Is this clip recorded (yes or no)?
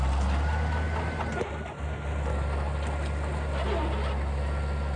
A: yes